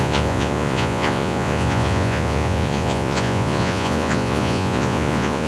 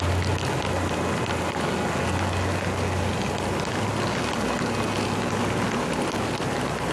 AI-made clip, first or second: first